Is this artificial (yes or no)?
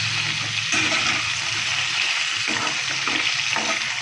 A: no